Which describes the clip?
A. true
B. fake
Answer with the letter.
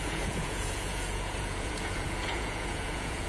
B